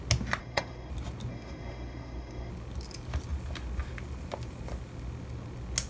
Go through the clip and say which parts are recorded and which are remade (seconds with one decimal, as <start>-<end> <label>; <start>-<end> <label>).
0.0-0.4 recorded; 0.4-0.9 remade; 0.9-1.3 recorded; 1.3-2.5 remade; 2.5-5.9 recorded